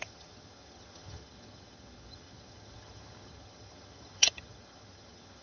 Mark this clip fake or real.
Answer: fake